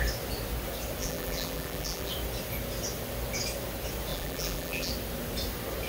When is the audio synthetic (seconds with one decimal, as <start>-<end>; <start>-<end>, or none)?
1.0-2.1; 4.1-4.9